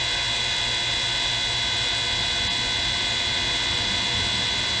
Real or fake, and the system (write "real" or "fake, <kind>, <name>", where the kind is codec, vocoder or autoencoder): real